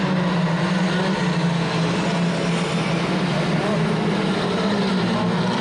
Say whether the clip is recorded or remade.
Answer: recorded